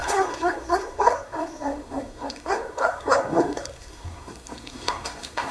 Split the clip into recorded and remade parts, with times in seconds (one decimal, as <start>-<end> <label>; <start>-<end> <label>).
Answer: 0.0-5.5 remade